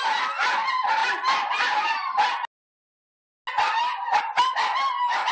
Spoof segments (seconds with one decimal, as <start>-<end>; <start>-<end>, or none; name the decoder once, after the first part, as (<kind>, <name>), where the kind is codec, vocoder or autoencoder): none